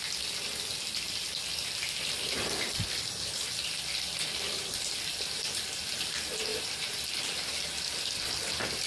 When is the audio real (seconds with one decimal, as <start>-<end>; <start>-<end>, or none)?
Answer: 0.0-6.5; 7.1-8.9